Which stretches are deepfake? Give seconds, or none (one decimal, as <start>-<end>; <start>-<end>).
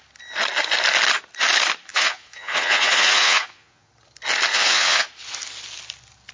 1.9-3.9; 4.5-5.1